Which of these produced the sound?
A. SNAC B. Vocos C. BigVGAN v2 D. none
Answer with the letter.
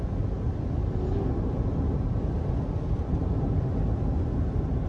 D